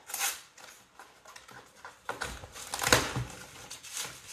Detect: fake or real fake